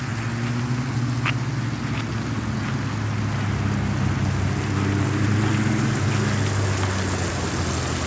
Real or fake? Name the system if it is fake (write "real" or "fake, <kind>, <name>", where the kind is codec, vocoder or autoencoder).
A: real